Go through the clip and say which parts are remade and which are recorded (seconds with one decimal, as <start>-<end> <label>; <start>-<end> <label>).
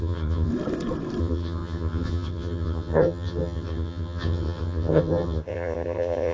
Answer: 0.0-0.5 remade; 0.5-1.2 recorded; 1.2-6.3 remade